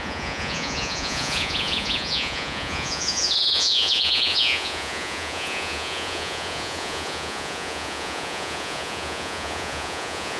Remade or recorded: remade